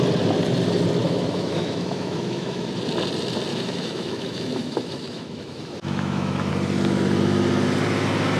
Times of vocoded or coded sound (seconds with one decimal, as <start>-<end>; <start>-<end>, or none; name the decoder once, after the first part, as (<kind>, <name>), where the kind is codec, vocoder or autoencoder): 1.0-2.7 (autoencoder, DAC-VAE); 3.5-6.5